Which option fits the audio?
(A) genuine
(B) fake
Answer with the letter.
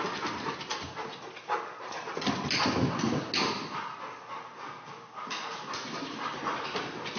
A